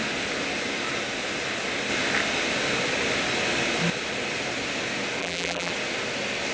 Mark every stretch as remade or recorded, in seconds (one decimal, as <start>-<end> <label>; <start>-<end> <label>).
0.0-5.2 recorded; 5.2-5.7 remade; 5.7-6.5 recorded